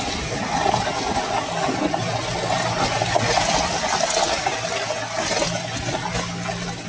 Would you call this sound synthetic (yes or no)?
no